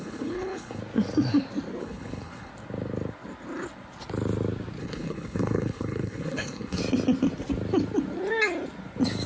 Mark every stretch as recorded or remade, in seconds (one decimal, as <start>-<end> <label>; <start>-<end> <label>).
0.0-0.8 remade; 0.8-1.8 recorded; 1.8-2.5 remade; 2.5-4.8 recorded; 4.8-6.8 remade; 6.8-9.3 recorded